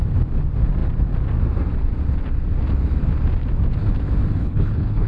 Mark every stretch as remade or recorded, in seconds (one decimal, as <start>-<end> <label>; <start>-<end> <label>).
0.0-4.4 recorded; 4.4-5.1 remade